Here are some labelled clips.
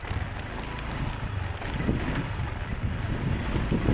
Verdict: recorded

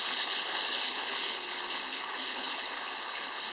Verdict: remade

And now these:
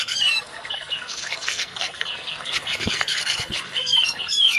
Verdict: remade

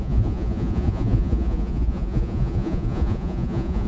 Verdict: remade